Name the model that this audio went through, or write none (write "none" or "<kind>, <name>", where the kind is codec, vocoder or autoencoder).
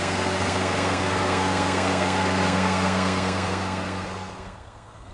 codec, SNAC